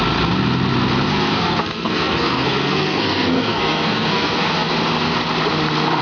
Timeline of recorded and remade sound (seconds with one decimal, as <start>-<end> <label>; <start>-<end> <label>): 0.0-1.1 recorded; 1.1-4.7 remade; 4.7-6.0 recorded